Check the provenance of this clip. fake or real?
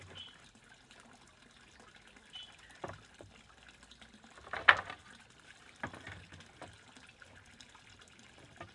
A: real